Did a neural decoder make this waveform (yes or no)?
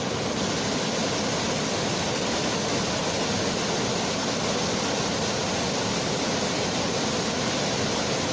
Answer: no